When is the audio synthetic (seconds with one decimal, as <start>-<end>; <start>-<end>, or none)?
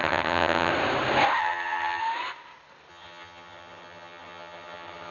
0.0-0.7; 1.4-2.0; 2.9-5.1